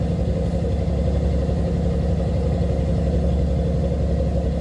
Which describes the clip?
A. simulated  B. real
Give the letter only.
B